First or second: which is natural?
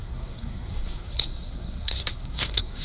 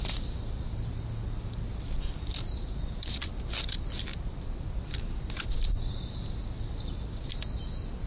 second